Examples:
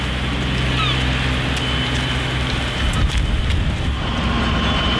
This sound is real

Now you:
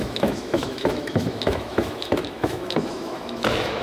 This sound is fake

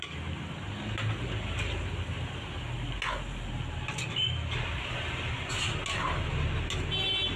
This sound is real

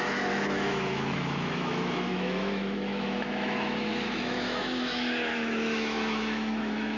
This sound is fake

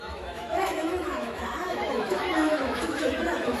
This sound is fake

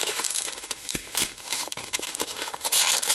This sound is fake